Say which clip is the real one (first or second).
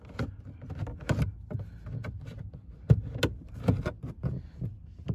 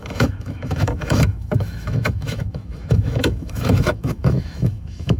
first